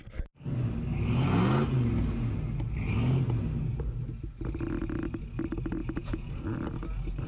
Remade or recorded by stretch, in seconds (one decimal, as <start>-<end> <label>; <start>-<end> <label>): 0.0-5.8 recorded; 5.8-6.3 remade; 6.3-7.3 recorded